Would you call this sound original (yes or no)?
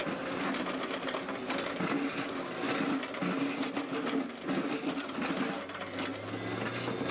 yes